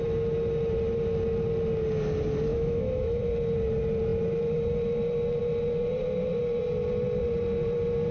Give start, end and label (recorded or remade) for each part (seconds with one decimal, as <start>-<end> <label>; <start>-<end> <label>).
0.0-2.5 recorded; 2.5-3.2 remade; 3.2-8.1 recorded